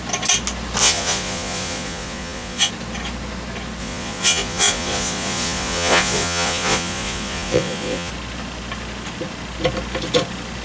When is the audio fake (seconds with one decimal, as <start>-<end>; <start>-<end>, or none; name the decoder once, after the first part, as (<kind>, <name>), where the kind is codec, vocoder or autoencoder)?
0.8-2.7 (vocoder, Vocos); 3.8-8.1